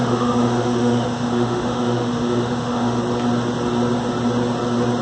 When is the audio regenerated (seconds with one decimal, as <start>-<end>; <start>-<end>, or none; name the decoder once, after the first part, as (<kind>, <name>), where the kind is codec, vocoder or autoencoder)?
0.0-3.0 (autoencoder, DAC-VAE)